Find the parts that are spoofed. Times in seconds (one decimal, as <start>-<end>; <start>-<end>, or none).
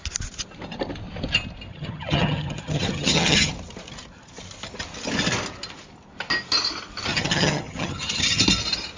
1.7-3.5; 7.1-8.4